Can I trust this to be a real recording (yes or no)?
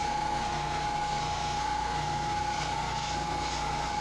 no